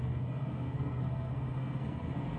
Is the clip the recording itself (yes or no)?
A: no